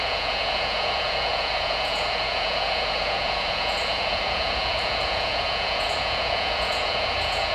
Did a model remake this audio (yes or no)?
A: yes